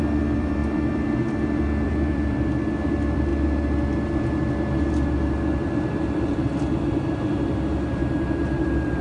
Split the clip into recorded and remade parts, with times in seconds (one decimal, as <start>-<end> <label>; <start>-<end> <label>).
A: 0.0-3.3 remade; 3.3-5.9 recorded; 5.9-8.0 remade; 8.0-8.6 recorded; 8.6-9.0 remade